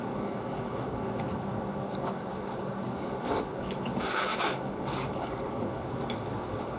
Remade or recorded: remade